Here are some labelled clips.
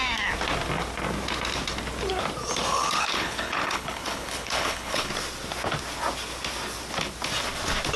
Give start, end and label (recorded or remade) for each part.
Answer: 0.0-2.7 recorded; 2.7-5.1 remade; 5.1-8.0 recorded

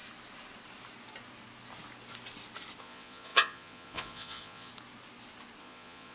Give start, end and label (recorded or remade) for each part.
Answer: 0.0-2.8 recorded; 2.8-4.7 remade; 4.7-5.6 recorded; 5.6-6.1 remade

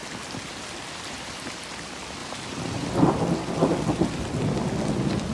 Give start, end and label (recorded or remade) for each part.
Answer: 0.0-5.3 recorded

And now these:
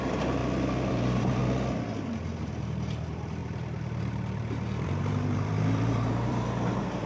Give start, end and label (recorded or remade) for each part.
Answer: 0.0-0.4 remade; 0.4-0.9 recorded; 0.9-1.4 remade; 1.4-2.4 recorded; 2.4-7.1 remade

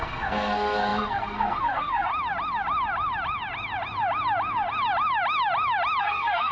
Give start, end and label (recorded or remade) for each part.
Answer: 0.0-2.1 remade; 2.1-6.0 recorded; 6.0-6.5 remade